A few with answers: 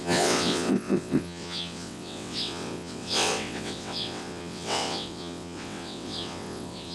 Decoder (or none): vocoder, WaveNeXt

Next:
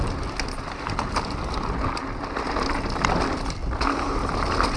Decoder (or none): none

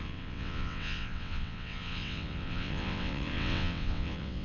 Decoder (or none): vocoder, WaveNeXt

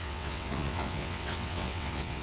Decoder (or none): vocoder, WaveNeXt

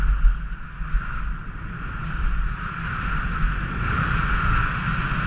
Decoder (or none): none